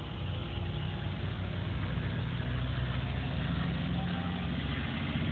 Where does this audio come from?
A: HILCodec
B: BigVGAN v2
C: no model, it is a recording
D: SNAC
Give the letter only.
C